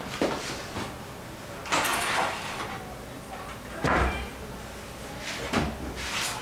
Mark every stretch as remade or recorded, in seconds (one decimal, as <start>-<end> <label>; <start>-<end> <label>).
0.0-1.9 recorded; 1.9-5.6 remade; 5.6-6.4 recorded